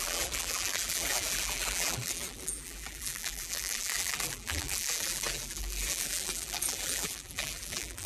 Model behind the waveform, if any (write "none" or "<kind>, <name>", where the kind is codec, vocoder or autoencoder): vocoder, BigVGAN v2